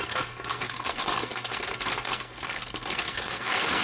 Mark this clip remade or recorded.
remade